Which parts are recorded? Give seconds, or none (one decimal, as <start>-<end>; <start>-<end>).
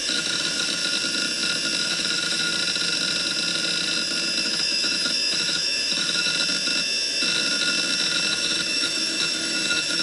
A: 0.8-1.8; 2.5-4.4; 6.3-8.3